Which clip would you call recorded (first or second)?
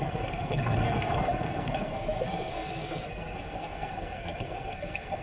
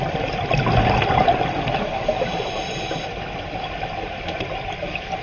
second